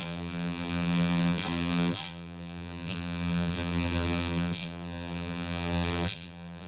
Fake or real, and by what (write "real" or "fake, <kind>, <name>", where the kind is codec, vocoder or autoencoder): fake, vocoder, BigVGAN v2